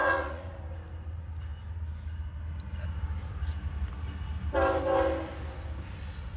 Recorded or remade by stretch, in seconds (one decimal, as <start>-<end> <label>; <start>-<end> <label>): 0.0-0.6 remade; 0.6-6.4 recorded